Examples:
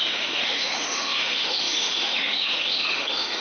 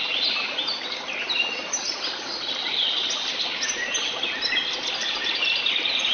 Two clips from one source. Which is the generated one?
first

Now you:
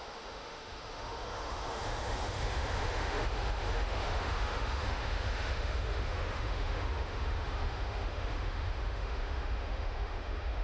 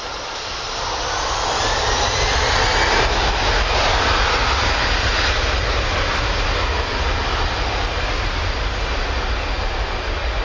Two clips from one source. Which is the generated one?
first